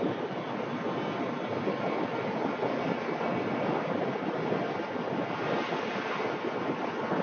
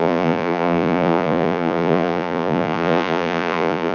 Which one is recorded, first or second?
first